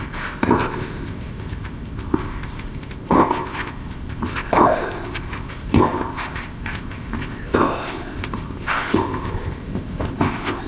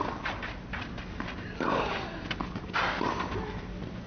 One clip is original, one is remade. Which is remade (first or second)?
first